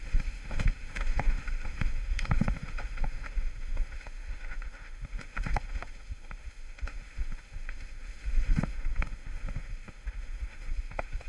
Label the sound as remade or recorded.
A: remade